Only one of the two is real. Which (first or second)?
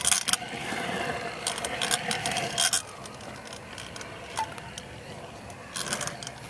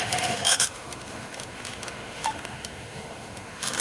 first